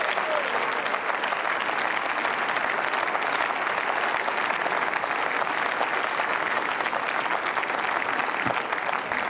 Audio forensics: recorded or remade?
recorded